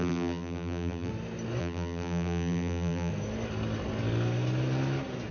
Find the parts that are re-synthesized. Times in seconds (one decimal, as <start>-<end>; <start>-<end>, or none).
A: 0.0-1.1; 1.6-3.1